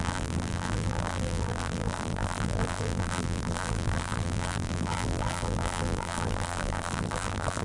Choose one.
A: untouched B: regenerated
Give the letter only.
B